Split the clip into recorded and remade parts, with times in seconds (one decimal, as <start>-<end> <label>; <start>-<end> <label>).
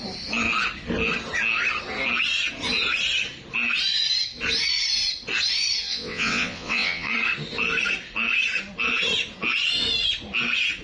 0.0-5.8 recorded; 5.8-7.1 remade; 7.1-10.8 recorded